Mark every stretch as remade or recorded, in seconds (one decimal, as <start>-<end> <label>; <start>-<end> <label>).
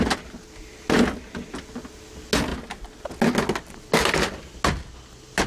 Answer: 0.0-5.5 recorded